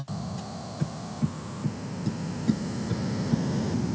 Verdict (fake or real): real